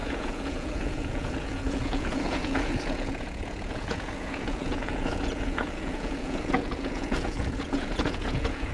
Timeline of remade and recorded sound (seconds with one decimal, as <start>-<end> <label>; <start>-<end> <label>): 0.0-8.7 remade